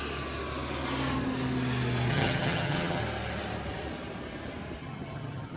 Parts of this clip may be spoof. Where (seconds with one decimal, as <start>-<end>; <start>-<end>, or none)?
2.1-3.0; 4.8-5.6

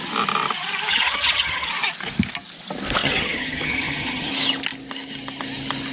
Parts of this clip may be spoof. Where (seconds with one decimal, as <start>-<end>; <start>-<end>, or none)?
0.9-1.7; 3.0-4.3

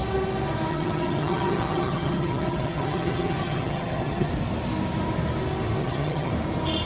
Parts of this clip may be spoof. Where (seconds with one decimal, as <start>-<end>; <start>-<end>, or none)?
0.7-4.3; 5.8-6.3

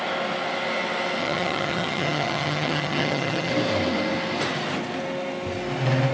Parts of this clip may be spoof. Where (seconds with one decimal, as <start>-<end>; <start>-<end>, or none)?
1.2-3.5

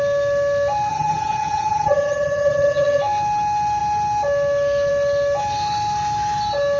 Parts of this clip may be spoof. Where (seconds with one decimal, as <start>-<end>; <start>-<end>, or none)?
0.9-3.0

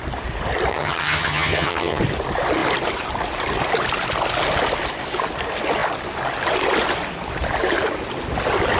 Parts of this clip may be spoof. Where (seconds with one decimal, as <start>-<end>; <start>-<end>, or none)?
0.7-2.0